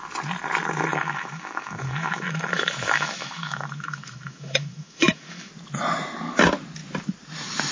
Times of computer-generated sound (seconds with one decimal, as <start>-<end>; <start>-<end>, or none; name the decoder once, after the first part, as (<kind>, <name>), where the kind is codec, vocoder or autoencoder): 0.9-5.5 (autoencoder, DAC-VAE)